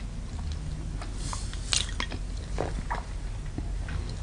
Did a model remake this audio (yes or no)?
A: no